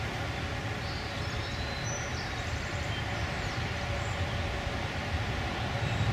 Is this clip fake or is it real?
fake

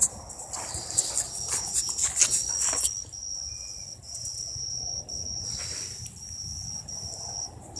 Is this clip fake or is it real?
real